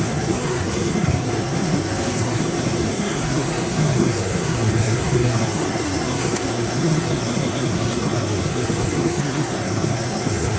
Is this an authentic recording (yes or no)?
no